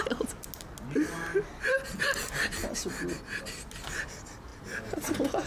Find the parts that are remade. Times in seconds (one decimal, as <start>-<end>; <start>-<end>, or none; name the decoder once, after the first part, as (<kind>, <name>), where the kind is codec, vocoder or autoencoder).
none